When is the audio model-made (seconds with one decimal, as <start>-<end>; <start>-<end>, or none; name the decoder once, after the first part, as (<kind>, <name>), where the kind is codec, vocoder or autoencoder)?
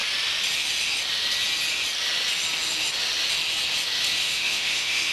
4.2-5.1 (autoencoder, DAC-VAE)